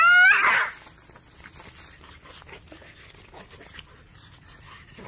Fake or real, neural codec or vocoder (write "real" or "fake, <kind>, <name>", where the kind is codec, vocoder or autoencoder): real